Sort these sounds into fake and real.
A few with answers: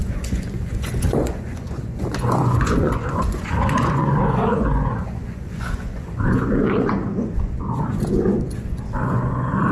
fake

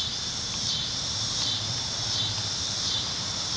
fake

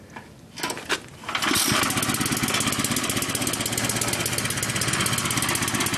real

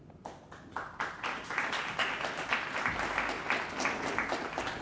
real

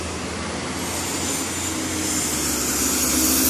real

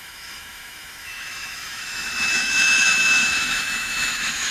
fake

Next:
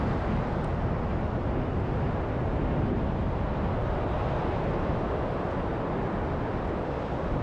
real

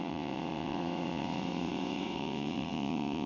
fake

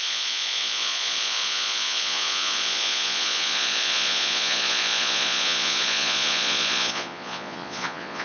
fake